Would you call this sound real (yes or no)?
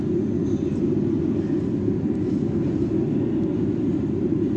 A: yes